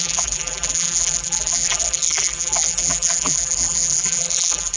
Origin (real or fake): fake